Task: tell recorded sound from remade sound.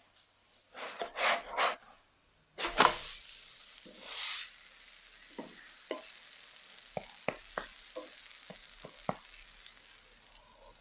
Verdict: recorded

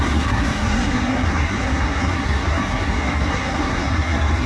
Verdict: remade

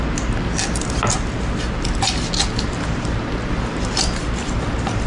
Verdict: recorded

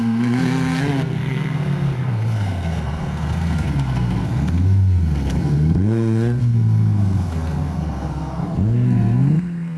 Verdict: remade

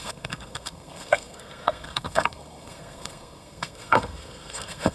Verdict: remade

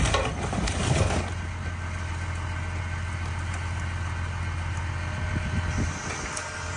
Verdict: recorded